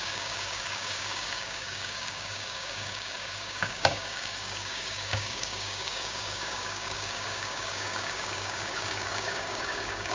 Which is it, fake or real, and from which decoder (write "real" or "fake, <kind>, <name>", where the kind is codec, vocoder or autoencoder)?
fake, codec, DAC